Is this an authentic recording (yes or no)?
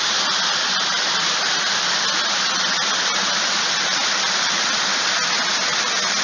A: yes